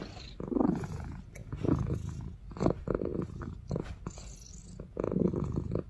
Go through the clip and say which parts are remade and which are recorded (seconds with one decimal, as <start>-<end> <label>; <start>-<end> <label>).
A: 0.0-5.9 recorded